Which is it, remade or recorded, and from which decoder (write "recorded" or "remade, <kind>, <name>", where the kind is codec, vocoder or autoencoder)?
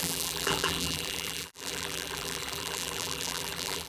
remade, vocoder, BigVGAN v2